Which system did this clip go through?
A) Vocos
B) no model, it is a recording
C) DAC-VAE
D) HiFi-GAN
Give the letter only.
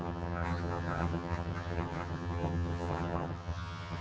D